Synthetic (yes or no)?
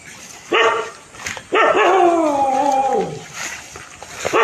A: no